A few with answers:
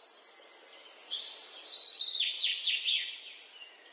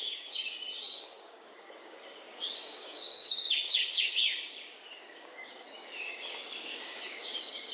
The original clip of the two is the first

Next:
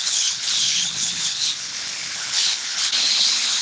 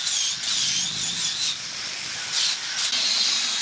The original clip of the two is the second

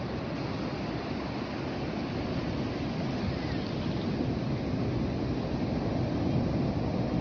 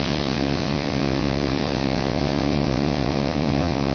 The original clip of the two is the first